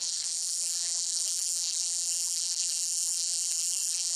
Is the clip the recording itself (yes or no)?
no